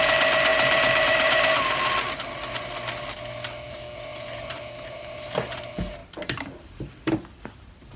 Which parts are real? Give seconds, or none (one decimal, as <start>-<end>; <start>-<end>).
0.0-0.5; 1.9-4.1; 5.6-6.0; 7.1-8.0